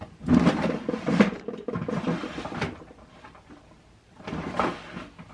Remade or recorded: remade